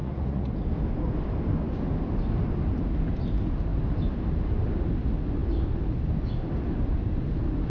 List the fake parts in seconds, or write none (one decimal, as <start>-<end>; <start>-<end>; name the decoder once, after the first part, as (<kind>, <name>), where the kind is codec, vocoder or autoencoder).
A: 0.0-0.5 (vocoder, Vocos)